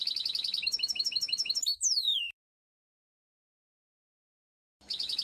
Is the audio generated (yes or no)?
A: yes